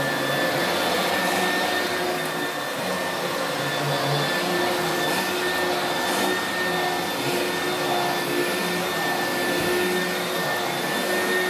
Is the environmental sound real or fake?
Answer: real